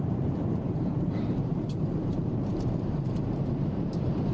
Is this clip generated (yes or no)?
yes